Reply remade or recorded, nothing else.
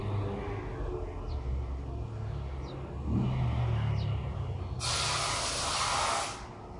recorded